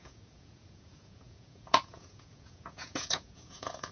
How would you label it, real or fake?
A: fake